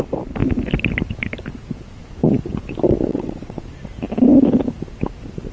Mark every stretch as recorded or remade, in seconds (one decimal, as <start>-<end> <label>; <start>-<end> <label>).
0.0-3.1 recorded; 3.1-3.6 remade; 3.6-5.5 recorded